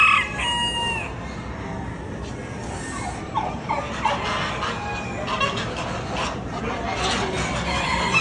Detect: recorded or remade recorded